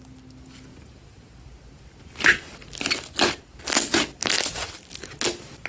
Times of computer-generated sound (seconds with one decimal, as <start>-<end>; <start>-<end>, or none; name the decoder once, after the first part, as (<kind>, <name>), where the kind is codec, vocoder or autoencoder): none